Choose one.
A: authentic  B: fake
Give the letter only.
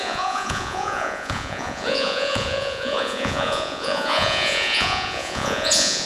B